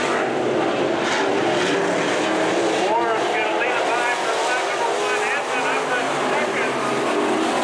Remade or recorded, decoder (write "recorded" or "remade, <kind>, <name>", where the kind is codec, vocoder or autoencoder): recorded